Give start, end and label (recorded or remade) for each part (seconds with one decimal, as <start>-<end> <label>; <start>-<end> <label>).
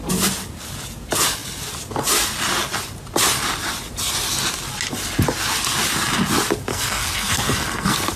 0.0-6.7 recorded; 6.7-8.2 remade